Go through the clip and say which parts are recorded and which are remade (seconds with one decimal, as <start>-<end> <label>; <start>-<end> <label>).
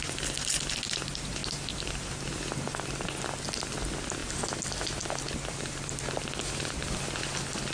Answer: 0.0-7.7 recorded